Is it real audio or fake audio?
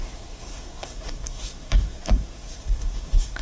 fake